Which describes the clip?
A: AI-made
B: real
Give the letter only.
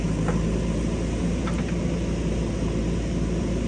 B